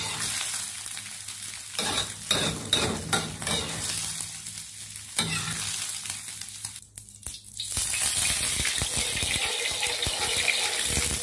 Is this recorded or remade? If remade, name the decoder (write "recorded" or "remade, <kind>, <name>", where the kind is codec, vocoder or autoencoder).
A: recorded